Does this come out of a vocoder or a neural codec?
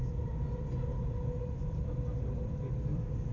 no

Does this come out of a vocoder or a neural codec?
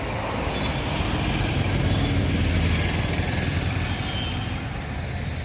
no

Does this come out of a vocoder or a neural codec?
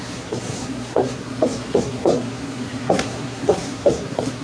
yes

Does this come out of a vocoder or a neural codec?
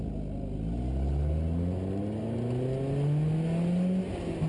no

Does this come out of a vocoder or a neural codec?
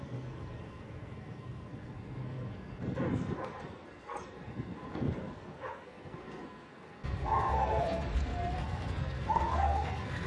yes